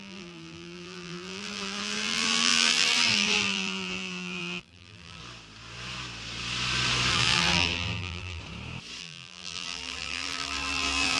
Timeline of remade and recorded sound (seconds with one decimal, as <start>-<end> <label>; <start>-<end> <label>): 0.0-5.2 remade; 5.2-7.1 recorded; 7.1-8.4 remade; 8.4-9.0 recorded; 9.0-11.2 remade